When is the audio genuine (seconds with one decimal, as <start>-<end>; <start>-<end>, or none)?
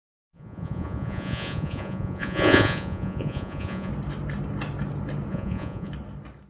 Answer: 3.9-5.3; 5.9-6.5